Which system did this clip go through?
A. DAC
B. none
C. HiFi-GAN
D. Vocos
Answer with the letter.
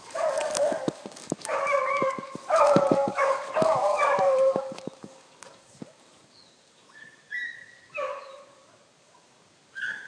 A